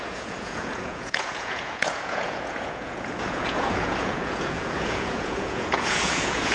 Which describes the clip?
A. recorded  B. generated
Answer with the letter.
B